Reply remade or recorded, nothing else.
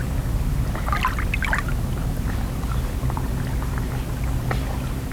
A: recorded